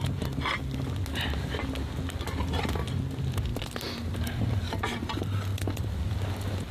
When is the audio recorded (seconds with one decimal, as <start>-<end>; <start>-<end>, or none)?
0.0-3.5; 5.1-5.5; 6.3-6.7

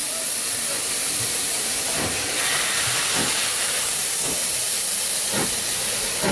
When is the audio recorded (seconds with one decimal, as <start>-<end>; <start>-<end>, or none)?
0.0-1.1

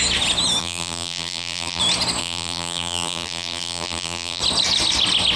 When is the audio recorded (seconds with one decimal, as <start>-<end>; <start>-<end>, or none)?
0.0-0.6; 1.8-2.2; 4.4-5.4

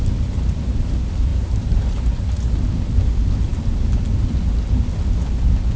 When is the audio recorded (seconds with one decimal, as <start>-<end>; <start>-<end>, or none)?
0.0-1.3; 2.4-5.8